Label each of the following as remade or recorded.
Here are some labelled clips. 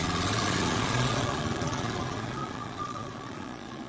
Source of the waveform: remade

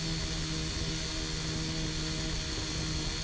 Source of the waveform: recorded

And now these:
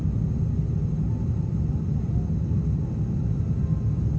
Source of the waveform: recorded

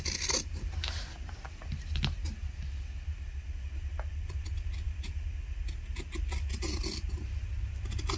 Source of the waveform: recorded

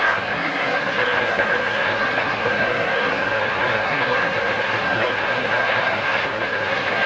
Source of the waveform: remade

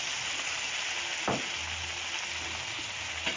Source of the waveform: recorded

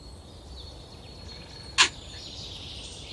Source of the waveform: recorded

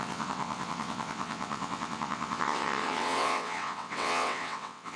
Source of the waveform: remade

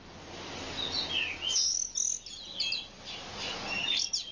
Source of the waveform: recorded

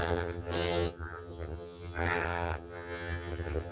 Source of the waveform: remade